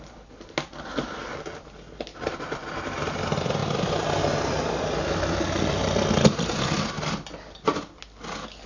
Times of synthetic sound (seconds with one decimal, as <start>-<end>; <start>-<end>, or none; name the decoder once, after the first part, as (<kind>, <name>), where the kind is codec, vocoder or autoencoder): none